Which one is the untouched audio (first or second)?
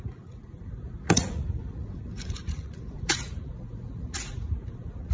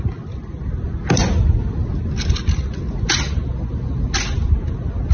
second